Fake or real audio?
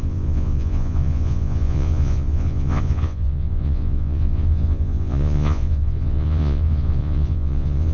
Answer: fake